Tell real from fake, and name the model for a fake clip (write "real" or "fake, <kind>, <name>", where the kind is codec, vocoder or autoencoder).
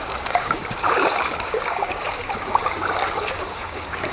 fake, codec, DAC